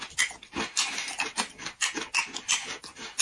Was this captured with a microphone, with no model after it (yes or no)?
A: yes